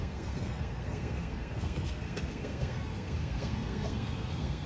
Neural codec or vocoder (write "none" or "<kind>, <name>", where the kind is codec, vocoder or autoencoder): codec, SNAC